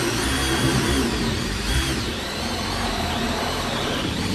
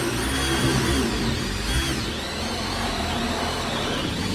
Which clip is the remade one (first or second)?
first